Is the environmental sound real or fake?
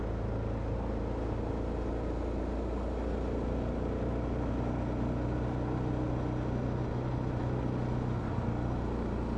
real